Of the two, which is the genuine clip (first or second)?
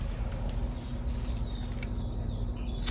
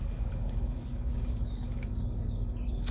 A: first